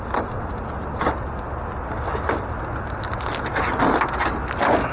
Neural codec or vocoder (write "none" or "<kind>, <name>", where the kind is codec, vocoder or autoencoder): none